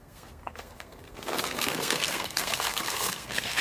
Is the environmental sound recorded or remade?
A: remade